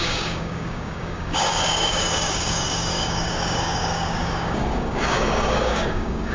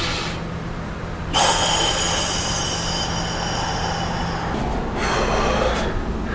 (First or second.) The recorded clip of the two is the second